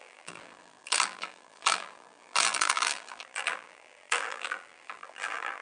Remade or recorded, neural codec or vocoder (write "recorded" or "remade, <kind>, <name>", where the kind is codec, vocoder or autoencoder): remade, vocoder, BigVGAN v2